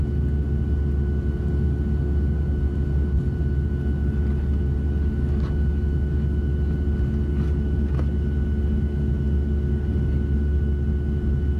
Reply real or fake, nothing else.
real